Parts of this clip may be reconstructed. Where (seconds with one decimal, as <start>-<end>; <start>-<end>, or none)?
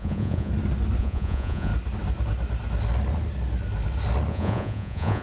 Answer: 0.0-0.5; 1.0-1.7; 4.3-5.2